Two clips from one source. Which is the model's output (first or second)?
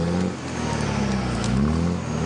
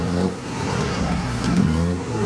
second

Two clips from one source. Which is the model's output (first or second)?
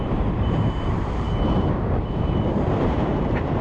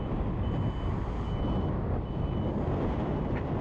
first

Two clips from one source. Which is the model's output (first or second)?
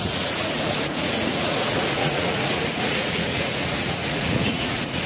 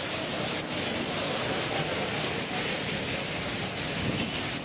first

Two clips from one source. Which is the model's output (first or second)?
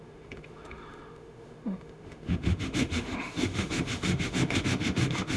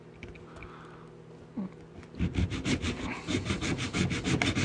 first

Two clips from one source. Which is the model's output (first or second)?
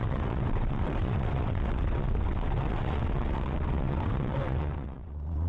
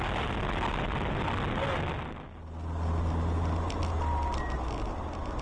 first